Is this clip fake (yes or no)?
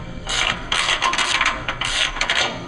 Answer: yes